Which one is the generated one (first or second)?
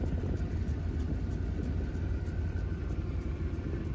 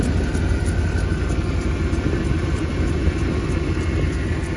first